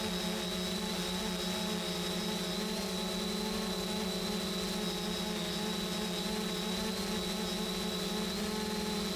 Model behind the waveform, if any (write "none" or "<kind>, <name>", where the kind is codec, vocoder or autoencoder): none